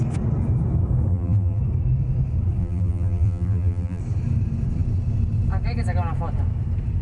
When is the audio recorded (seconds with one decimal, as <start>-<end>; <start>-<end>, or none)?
0.0-1.1; 1.6-2.6; 4.0-7.0

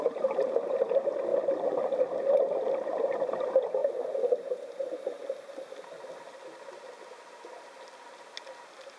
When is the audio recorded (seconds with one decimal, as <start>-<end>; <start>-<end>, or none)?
0.0-1.3; 1.8-9.0

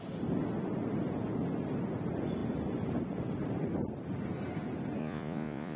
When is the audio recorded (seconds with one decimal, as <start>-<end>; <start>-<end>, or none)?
0.0-5.0

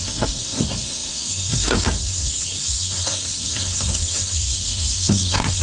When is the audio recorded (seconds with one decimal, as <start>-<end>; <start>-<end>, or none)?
none

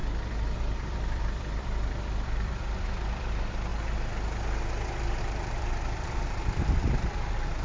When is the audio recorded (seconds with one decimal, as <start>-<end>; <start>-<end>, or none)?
3.7-5.2